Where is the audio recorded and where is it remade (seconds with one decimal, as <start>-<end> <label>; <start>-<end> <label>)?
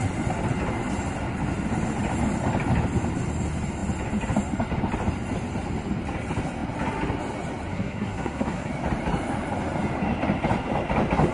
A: 0.0-7.7 recorded; 7.7-8.7 remade; 8.7-11.3 recorded